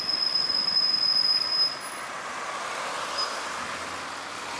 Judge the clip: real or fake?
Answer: real